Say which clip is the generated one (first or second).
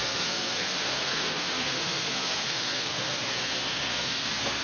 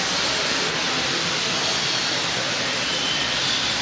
first